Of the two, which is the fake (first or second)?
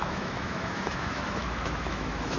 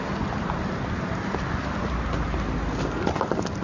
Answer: first